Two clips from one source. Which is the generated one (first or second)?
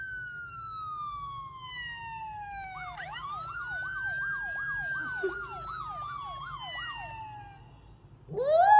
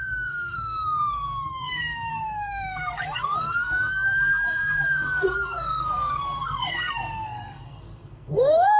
second